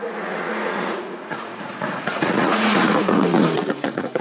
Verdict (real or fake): fake